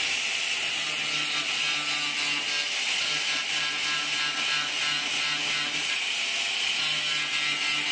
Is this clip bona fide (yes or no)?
yes